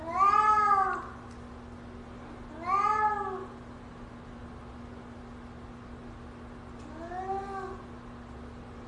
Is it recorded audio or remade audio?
recorded